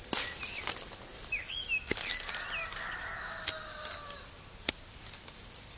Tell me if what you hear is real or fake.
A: real